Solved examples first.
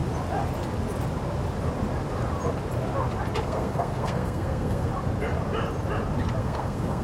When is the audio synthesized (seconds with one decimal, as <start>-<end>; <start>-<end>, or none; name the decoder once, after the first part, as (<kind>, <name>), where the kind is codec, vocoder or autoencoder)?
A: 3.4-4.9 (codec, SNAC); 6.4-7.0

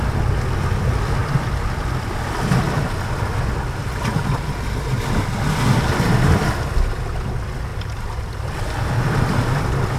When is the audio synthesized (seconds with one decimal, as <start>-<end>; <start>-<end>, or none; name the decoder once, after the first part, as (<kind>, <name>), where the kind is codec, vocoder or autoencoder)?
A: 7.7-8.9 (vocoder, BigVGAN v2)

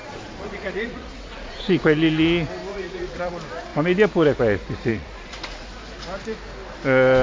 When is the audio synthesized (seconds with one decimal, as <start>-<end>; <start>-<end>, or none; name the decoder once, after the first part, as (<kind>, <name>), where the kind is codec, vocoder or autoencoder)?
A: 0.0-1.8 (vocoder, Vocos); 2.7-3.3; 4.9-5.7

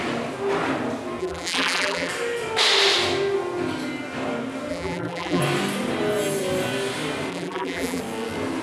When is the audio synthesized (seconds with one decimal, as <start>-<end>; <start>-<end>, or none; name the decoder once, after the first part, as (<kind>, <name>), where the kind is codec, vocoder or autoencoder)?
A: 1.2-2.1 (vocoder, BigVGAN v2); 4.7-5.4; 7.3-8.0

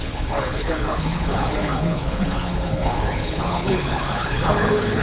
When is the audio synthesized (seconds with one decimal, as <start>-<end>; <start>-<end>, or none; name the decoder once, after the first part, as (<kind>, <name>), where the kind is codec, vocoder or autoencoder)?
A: 0.0-5.0 (codec, HILCodec)

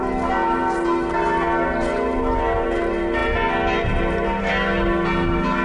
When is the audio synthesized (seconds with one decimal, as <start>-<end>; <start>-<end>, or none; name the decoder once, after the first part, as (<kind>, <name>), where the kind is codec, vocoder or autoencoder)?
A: none

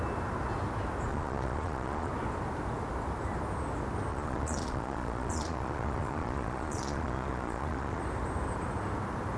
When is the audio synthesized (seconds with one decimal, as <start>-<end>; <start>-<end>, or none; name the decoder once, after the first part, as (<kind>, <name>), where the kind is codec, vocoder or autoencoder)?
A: 1.1-2.1 (vocoder, Vocos); 4.1-8.0

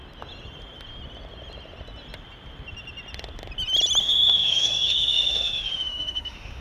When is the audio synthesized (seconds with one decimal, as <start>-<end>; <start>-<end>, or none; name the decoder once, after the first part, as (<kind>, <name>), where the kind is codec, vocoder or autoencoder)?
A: 4.0-6.6 (autoencoder, DAC-VAE)